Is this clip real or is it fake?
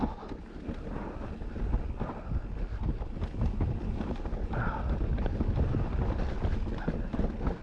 real